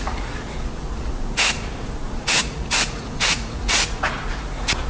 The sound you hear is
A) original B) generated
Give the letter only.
B